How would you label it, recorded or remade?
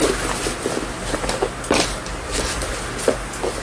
recorded